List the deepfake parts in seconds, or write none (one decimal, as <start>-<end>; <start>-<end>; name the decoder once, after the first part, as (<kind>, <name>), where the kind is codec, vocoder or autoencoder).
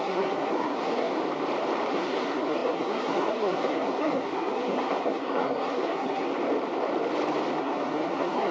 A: 0.0-1.2 (codec, SNAC); 1.9-6.3; 7.6-8.5